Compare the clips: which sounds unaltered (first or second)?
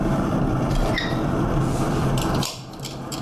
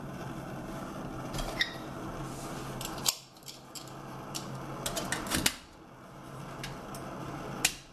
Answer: second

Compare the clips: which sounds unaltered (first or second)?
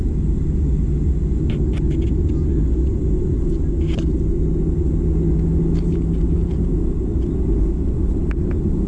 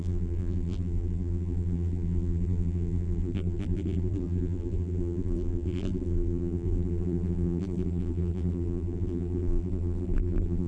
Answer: first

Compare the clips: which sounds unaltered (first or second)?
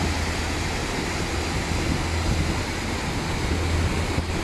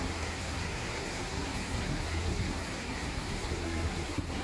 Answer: first